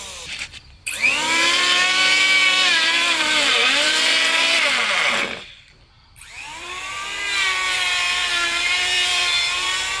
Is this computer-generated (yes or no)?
yes